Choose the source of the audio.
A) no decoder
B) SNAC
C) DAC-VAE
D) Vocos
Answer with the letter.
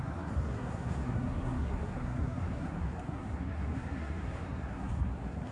B